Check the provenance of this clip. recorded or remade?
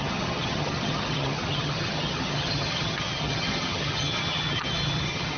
remade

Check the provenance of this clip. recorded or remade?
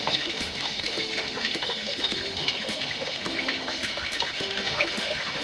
remade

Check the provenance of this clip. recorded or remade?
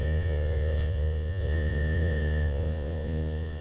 remade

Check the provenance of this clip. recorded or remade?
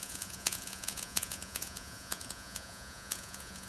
remade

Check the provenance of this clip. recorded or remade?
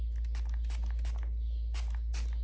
recorded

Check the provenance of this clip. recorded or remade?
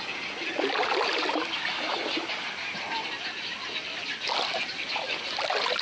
recorded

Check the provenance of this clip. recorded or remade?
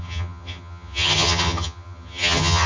remade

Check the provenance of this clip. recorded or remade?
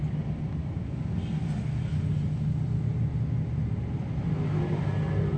recorded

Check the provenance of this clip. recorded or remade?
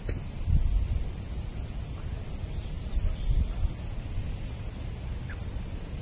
recorded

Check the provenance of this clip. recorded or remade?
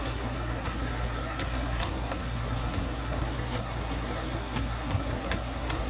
remade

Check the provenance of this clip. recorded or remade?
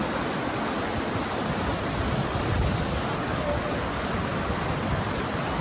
recorded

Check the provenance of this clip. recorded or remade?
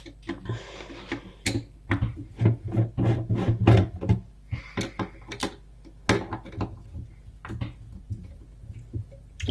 recorded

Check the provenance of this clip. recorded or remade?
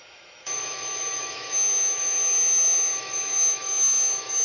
remade